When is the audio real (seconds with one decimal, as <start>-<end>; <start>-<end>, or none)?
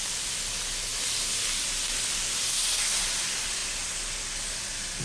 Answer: 0.0-5.0